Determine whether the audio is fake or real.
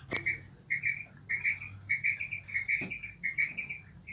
real